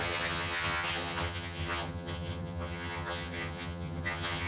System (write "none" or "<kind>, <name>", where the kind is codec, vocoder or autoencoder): vocoder, HiFi-GAN